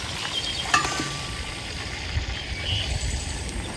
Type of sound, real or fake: fake